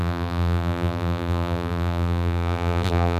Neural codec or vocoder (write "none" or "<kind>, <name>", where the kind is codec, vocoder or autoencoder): vocoder, BigVGAN v2